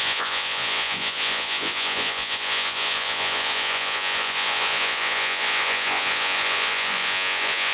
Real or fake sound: fake